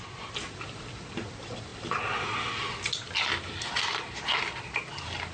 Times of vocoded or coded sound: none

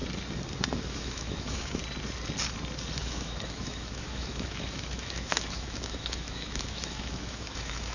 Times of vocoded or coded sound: 0.9-1.8 (autoencoder, DAC-VAE); 3.0-7.9